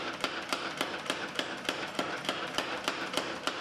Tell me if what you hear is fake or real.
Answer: real